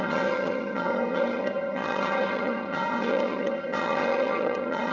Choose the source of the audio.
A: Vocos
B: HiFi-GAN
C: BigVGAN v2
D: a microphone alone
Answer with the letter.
B